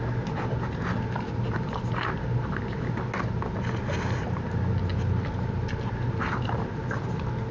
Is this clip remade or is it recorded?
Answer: recorded